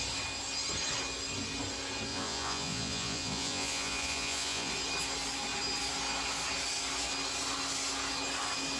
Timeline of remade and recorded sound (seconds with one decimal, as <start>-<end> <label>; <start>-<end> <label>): 0.0-2.1 recorded; 2.1-4.7 remade; 4.7-8.8 recorded